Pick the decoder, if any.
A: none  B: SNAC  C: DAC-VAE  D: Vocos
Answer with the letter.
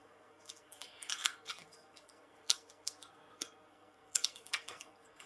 B